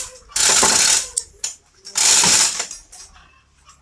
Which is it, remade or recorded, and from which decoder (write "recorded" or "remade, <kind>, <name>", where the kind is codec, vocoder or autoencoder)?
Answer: recorded